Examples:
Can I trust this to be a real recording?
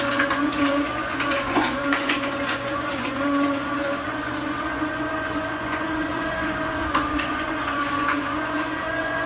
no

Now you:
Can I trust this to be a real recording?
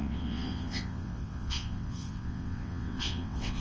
no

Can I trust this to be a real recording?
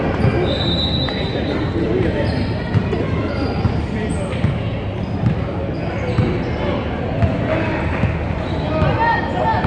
yes